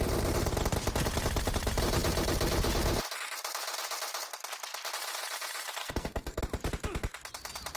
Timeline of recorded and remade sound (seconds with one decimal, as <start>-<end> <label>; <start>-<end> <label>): 0.0-5.8 recorded; 5.8-6.4 remade; 6.4-7.8 recorded